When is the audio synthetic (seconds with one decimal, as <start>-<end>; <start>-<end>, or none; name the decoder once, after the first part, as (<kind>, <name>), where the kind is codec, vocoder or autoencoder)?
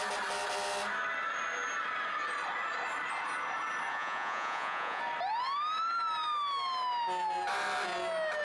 3.9-5.0 (vocoder, Vocos)